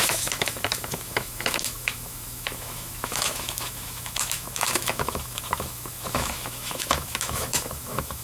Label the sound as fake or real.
fake